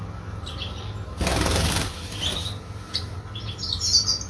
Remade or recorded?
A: recorded